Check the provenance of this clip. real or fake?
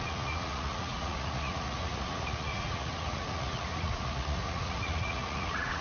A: fake